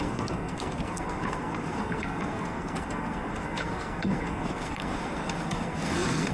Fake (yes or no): yes